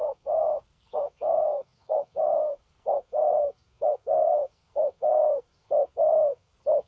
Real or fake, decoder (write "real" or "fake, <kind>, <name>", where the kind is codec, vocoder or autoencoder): fake, codec, SNAC